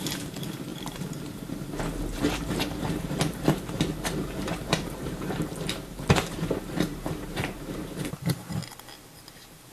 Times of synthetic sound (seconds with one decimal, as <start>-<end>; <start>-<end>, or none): 0.0-8.6